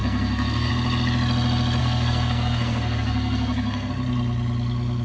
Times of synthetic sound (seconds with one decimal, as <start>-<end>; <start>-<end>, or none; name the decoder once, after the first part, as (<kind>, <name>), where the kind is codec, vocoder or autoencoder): 0.0-0.7 (codec, SNAC); 1.8-3.9